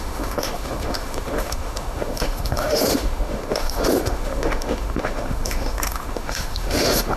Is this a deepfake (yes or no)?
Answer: yes